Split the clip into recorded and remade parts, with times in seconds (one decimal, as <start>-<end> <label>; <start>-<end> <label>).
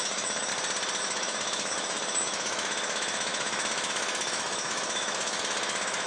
0.0-0.5 remade; 0.5-1.0 recorded; 1.0-6.1 remade